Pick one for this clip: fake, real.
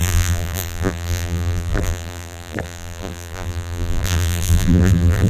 fake